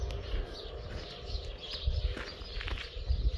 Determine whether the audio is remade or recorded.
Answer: recorded